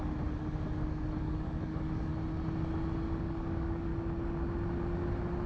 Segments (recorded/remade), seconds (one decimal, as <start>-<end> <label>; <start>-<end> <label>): 0.0-1.2 recorded; 1.2-2.1 remade; 2.1-3.2 recorded; 3.2-3.9 remade; 3.9-5.5 recorded